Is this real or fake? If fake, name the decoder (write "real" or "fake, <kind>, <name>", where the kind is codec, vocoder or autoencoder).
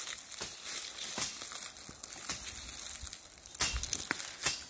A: real